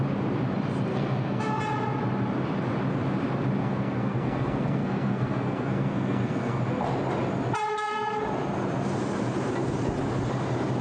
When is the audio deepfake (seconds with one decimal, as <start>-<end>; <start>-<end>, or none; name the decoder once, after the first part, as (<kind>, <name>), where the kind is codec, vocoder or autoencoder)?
0.9-1.6 (codec, SNAC); 3.6-6.6; 7.7-8.2